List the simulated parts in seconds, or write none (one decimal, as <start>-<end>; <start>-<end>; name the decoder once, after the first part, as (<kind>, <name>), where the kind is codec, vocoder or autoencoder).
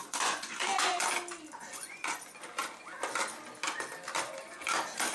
0.0-1.0 (vocoder, Vocos); 1.6-2.4